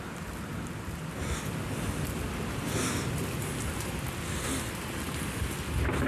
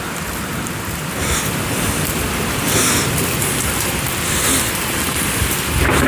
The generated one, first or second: second